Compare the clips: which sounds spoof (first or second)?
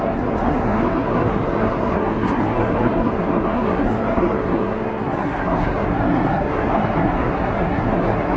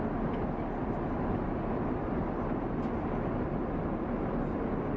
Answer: first